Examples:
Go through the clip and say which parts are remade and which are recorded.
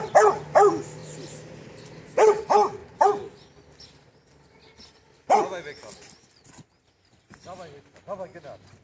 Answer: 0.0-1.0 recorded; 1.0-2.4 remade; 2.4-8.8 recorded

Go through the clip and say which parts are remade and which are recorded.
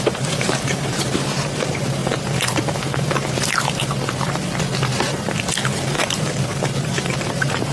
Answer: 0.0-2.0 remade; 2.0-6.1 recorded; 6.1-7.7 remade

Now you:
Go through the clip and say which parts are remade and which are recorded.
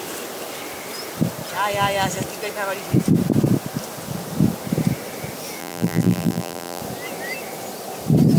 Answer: 0.0-5.6 recorded; 5.6-6.8 remade; 6.8-8.4 recorded